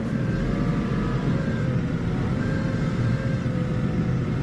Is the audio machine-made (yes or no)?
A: yes